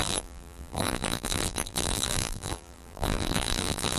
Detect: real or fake fake